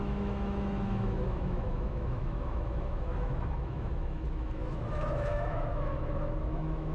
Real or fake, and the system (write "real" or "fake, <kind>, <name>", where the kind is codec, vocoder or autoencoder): fake, autoencoder, DAC-VAE